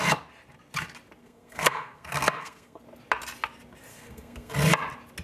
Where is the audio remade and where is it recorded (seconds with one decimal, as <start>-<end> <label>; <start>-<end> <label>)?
0.0-1.2 recorded; 1.2-2.8 remade; 2.8-3.9 recorded; 3.9-4.5 remade; 4.5-5.2 recorded